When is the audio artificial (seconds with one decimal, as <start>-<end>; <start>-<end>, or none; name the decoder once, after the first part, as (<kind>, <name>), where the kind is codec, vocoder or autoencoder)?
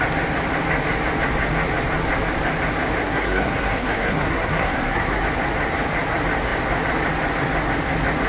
3.0-5.2 (codec, SNAC)